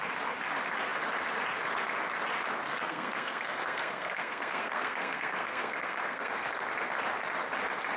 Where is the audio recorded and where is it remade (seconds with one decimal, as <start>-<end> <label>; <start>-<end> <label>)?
0.0-2.7 recorded; 2.7-6.6 remade; 6.6-8.0 recorded